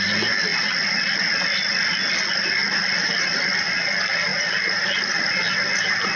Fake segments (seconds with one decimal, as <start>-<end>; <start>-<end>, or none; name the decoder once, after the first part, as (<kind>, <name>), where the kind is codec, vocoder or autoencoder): 2.6-3.7 (vocoder, BigVGAN v2)